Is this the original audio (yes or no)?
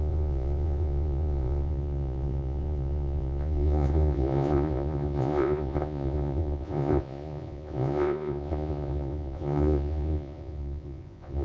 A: no